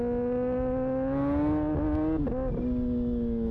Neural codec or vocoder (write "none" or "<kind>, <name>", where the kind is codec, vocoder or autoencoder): none